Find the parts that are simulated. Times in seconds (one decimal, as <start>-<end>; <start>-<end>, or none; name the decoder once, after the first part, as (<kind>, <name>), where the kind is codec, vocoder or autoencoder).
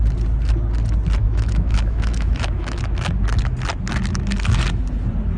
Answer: 1.2-2.8 (autoencoder, DAC-VAE)